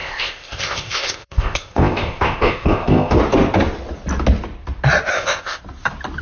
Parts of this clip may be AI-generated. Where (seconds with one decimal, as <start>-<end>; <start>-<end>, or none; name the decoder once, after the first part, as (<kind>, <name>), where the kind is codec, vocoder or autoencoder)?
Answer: 0.0-3.2 (codec, ZipCodec); 5.1-5.6